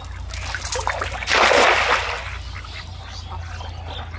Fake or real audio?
real